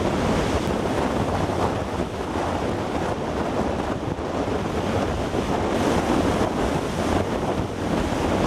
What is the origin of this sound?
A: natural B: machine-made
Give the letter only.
A